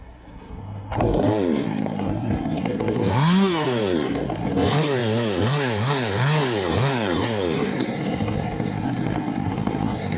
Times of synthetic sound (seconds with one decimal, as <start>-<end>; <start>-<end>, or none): 0.0-10.2